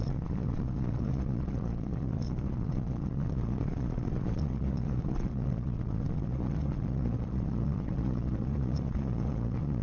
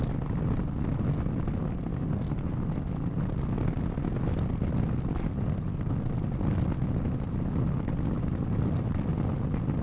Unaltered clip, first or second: second